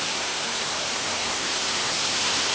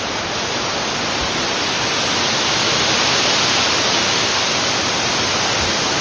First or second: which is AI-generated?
first